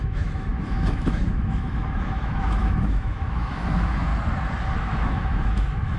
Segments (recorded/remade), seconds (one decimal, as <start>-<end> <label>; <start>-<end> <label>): 0.0-4.1 remade; 4.1-4.8 recorded; 4.8-6.0 remade